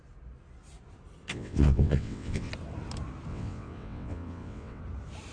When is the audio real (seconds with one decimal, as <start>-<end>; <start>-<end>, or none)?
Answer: 0.0-1.3; 2.5-3.3; 4.8-5.3